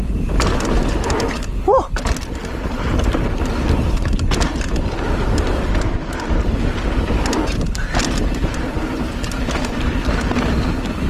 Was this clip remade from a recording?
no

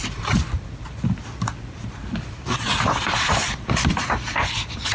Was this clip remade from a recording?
yes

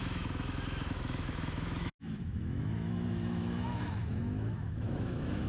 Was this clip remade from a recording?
yes